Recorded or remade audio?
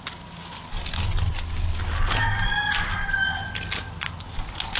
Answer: recorded